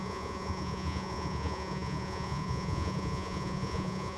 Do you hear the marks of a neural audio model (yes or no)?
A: yes